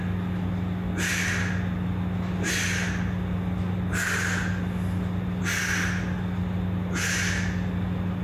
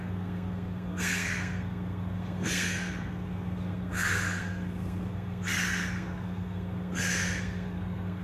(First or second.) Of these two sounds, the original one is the first